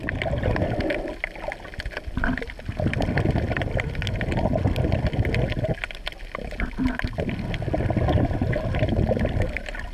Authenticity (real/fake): real